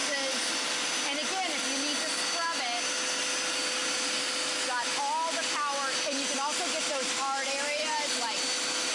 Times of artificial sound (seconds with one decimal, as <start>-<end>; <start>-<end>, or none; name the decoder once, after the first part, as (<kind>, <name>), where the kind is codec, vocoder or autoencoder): 7.4-8.1 (vocoder, BigVGAN v2)